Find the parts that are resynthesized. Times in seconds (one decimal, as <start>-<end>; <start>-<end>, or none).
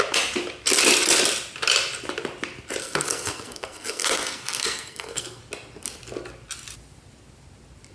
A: 2.8-5.4